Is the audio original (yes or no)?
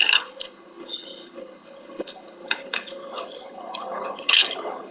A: no